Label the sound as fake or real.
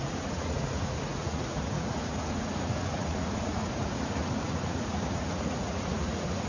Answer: fake